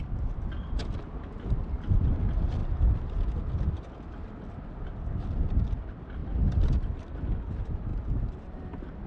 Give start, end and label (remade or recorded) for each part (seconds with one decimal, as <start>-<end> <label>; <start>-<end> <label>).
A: 0.0-7.9 recorded; 7.9-9.1 remade